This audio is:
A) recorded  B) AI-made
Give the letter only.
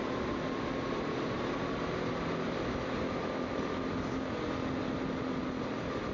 A